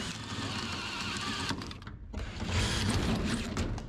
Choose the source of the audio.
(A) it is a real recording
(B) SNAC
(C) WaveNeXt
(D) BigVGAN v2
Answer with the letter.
A